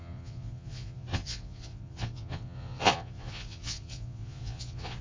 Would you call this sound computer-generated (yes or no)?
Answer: yes